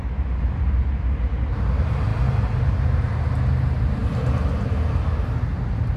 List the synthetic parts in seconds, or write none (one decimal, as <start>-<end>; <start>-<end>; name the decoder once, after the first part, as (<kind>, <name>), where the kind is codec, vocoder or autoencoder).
none